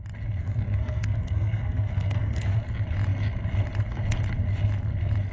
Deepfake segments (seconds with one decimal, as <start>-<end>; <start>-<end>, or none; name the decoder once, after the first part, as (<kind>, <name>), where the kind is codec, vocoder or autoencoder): 0.4-2.6 (codec, SNAC)